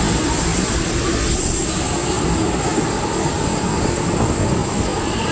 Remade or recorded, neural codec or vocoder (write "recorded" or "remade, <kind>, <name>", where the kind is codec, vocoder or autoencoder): recorded